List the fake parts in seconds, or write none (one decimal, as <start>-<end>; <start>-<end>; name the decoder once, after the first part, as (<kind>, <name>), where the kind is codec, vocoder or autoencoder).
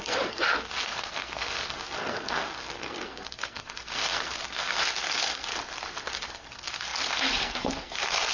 0.0-5.5 (codec, SNAC); 6.1-8.3